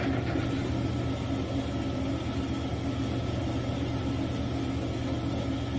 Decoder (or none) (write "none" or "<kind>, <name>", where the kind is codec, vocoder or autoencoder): none